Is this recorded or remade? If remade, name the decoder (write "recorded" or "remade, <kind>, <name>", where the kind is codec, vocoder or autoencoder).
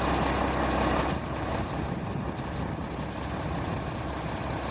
recorded